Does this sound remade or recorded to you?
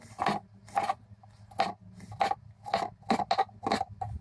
recorded